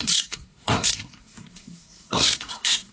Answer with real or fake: fake